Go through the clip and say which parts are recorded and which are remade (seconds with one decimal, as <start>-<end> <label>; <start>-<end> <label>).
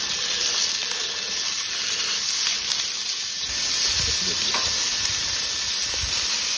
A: 0.0-2.5 recorded; 2.5-5.1 remade; 5.1-6.6 recorded